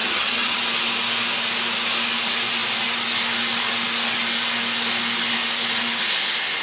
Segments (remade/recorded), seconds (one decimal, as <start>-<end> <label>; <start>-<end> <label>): 0.0-0.6 remade; 0.6-6.6 recorded